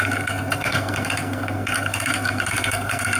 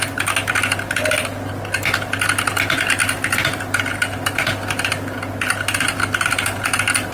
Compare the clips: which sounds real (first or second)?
second